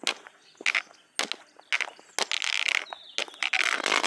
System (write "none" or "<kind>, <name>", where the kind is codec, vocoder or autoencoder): none